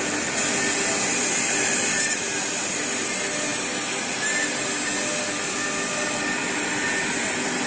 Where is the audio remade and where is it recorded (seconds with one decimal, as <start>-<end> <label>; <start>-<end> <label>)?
0.0-7.7 recorded